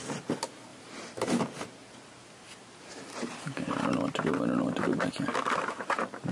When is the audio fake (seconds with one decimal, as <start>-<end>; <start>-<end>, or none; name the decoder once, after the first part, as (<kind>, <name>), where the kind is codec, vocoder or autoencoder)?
0.7-1.4 (vocoder, BigVGAN v2); 1.8-3.9